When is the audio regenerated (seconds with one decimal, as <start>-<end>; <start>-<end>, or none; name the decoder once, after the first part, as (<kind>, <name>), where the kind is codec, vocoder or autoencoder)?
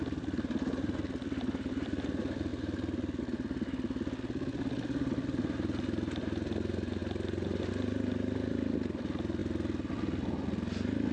none